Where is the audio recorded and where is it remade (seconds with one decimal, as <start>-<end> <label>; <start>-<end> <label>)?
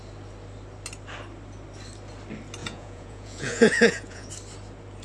0.0-2.6 recorded; 2.6-4.3 remade; 4.3-5.0 recorded